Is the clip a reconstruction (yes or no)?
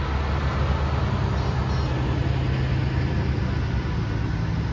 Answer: no